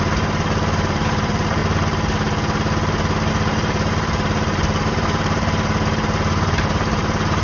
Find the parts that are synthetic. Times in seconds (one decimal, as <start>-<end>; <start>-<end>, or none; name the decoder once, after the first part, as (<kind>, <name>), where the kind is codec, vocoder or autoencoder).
0.0-1.6 (vocoder, BigVGAN v2); 3.3-7.4

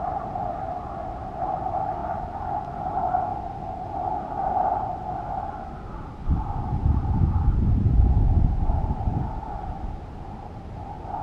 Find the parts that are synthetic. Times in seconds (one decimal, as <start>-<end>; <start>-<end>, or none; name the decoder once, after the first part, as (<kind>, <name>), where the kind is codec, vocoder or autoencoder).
none

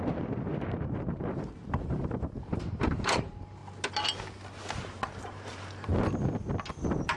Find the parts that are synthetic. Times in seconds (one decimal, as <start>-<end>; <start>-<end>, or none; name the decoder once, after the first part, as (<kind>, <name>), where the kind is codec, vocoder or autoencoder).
0.0-3.6 (vocoder, BigVGAN v2); 5.2-5.9; 6.7-7.2

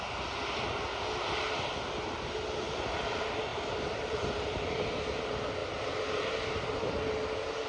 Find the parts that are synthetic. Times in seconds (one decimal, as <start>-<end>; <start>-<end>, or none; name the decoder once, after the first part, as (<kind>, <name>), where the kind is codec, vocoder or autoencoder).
3.5-4.1 (vocoder, BigVGAN v2); 5.6-7.1

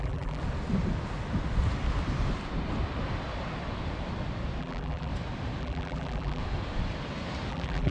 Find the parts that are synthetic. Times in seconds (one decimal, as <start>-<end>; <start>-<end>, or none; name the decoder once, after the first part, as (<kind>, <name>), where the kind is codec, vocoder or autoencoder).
0.0-0.4 (vocoder, BigVGAN v2); 4.6-5.1; 5.6-6.4; 7.5-7.9